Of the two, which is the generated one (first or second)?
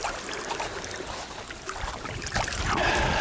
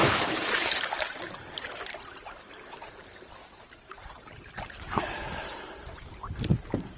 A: second